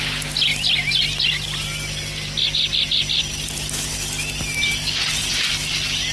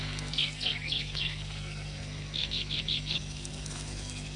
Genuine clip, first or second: first